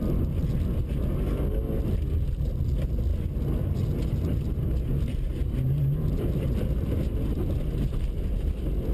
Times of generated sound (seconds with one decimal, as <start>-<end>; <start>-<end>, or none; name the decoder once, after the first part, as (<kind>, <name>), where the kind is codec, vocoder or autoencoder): none